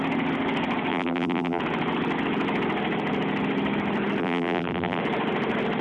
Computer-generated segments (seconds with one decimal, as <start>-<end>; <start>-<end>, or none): 0.9-1.6; 4.2-5.0